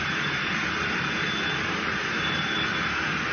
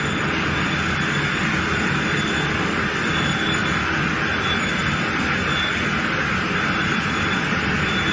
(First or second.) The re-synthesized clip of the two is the first